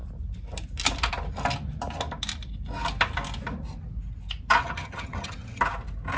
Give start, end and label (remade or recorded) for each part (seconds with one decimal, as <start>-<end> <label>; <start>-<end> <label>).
0.0-4.6 recorded; 4.6-5.6 remade; 5.6-6.2 recorded

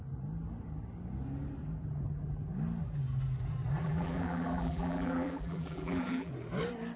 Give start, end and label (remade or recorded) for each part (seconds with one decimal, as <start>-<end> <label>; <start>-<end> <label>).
0.0-3.8 recorded; 3.8-6.3 remade; 6.3-7.0 recorded

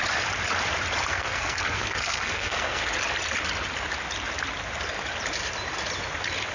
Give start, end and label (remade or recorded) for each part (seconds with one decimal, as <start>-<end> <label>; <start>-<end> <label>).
0.0-1.1 recorded; 1.1-2.9 remade; 2.9-6.5 recorded

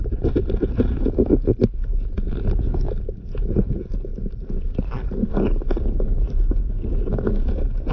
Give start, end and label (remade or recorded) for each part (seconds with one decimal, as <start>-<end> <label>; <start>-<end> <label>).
0.0-7.9 recorded

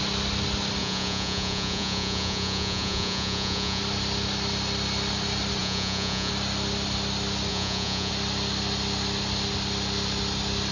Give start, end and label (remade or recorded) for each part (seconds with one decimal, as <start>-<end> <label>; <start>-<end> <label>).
0.0-0.8 recorded; 0.8-3.8 remade; 3.8-5.6 recorded; 5.6-6.3 remade; 6.3-7.5 recorded; 7.5-8.1 remade; 8.1-10.7 recorded

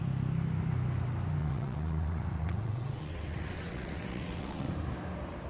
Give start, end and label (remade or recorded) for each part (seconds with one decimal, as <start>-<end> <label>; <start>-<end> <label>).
0.0-1.4 recorded; 1.4-4.7 remade; 4.7-5.5 recorded

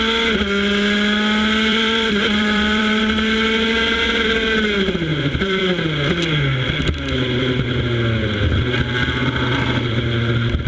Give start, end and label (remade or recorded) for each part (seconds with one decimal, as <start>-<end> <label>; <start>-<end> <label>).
0.0-1.7 recorded; 1.7-3.0 remade; 3.0-5.1 recorded; 5.1-5.6 remade; 5.6-10.7 recorded

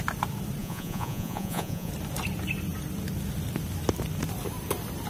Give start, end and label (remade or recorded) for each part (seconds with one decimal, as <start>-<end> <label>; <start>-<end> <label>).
0.0-0.6 recorded; 0.6-1.9 remade; 1.9-5.1 recorded